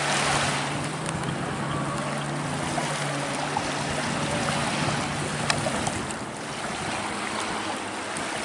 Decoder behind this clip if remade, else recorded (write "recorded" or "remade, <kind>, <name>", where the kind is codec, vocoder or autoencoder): recorded